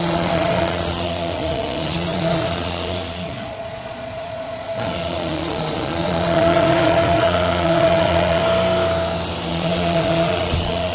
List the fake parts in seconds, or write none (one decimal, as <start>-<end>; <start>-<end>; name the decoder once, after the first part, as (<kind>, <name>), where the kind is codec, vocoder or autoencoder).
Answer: 0.0-8.4 (vocoder, Vocos); 9.5-10.9